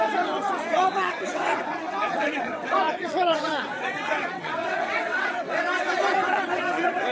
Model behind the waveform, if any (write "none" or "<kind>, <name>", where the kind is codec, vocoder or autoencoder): vocoder, WaveNeXt